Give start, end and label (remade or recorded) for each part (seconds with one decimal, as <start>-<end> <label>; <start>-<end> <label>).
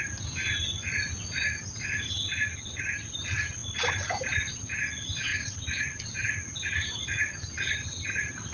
0.0-8.5 recorded